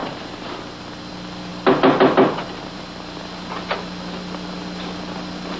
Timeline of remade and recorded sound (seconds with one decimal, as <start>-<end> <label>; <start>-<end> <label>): 0.0-5.6 recorded